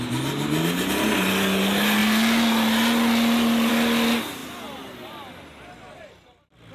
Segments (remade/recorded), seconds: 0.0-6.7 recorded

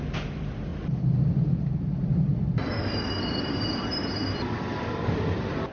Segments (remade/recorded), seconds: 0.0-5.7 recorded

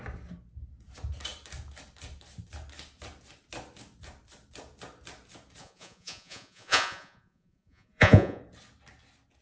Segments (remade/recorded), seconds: 0.0-5.6 recorded; 5.6-8.4 remade; 8.4-9.4 recorded

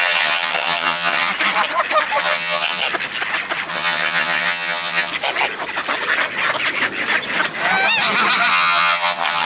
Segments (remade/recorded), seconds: 0.0-1.3 remade; 1.3-2.2 recorded; 2.2-2.8 remade; 2.8-3.7 recorded; 3.7-5.1 remade; 5.1-8.5 recorded; 8.5-9.4 remade

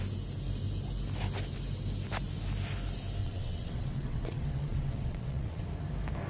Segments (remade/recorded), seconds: 0.0-3.2 recorded; 3.2-5.6 remade; 5.6-6.3 recorded

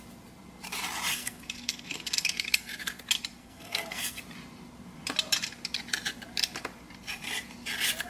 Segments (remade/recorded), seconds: 0.0-1.1 recorded; 1.1-3.0 remade; 3.0-3.4 recorded; 3.4-4.2 remade; 4.2-8.1 recorded

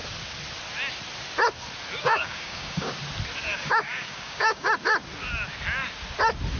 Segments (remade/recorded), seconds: 0.0-2.0 recorded; 2.0-2.9 remade; 2.9-3.5 recorded; 3.5-4.7 remade; 4.7-6.6 recorded